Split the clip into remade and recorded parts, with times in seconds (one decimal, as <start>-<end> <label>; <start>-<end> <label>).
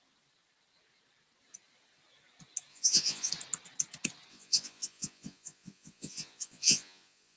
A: 0.0-2.7 recorded; 2.7-3.3 remade; 3.3-4.3 recorded; 4.3-7.4 remade